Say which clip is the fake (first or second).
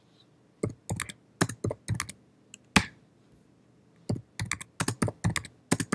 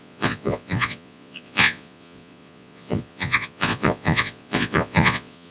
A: second